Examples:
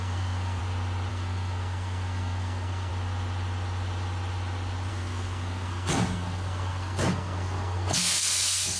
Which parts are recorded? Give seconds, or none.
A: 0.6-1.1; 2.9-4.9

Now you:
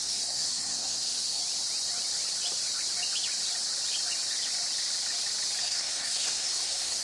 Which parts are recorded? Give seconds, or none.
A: 1.4-5.6

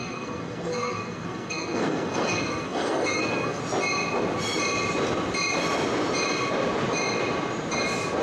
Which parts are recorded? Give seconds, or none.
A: 3.6-8.2